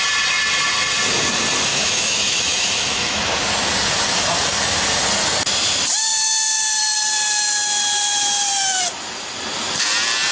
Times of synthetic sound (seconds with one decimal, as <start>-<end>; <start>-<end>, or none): 1.7-3.2